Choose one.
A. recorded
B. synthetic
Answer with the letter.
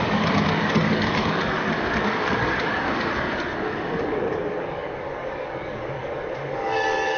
B